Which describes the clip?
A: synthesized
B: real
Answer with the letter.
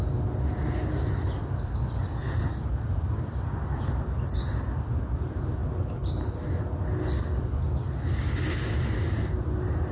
B